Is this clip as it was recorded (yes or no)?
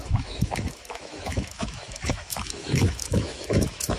no